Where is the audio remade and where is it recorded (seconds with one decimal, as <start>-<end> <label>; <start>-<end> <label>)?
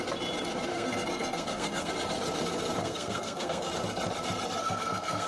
0.0-0.7 recorded; 0.7-1.9 remade; 1.9-2.8 recorded; 2.8-3.7 remade; 3.7-4.6 recorded; 4.6-5.3 remade